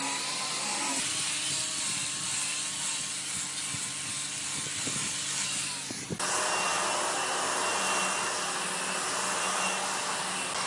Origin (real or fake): real